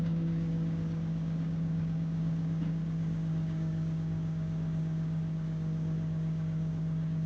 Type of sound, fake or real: fake